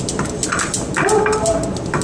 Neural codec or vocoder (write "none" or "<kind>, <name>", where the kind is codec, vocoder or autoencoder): none